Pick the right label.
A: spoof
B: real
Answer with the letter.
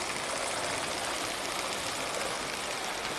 B